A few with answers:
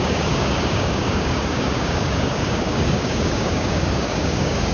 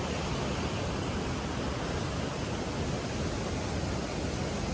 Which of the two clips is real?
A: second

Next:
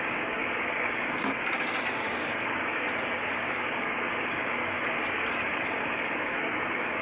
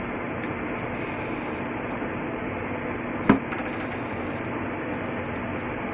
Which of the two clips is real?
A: second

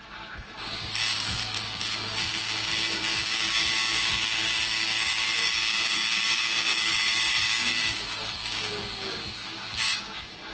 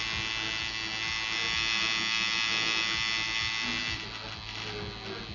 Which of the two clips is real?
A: second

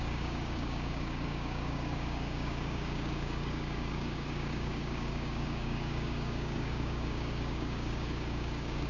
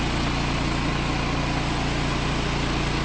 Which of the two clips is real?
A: second